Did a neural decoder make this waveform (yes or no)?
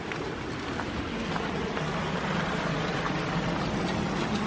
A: no